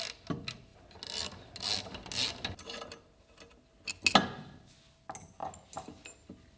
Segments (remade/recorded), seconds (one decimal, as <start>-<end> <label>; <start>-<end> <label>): 0.0-6.6 recorded